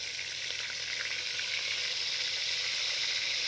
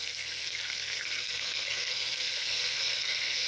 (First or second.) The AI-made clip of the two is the second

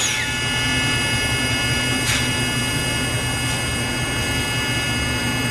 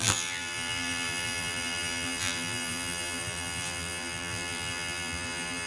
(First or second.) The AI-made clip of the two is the second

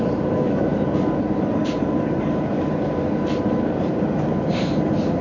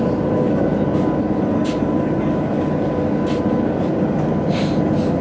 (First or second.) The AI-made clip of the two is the first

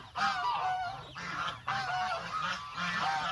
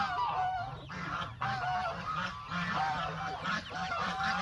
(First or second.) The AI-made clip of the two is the second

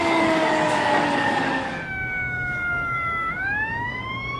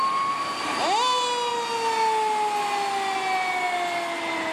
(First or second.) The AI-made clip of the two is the first